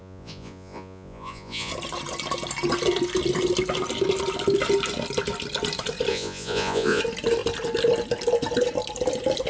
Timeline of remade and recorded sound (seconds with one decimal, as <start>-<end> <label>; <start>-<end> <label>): 0.0-1.7 remade; 1.7-6.1 recorded; 6.1-7.0 remade; 7.0-9.5 recorded